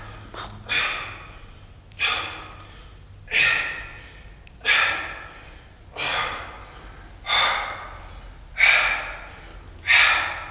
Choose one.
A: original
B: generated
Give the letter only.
A